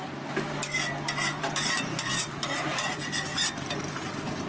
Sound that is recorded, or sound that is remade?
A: recorded